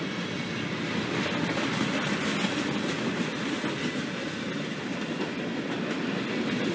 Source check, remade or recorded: recorded